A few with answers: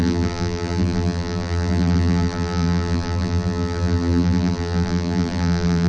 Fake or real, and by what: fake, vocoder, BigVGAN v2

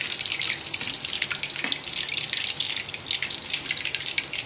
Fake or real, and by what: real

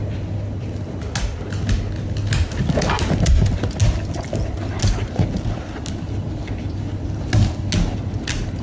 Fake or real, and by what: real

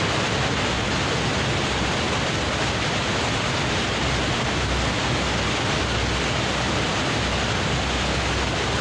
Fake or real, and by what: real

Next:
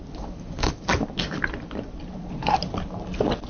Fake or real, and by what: fake, vocoder, BigVGAN v2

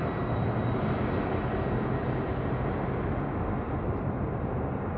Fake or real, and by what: real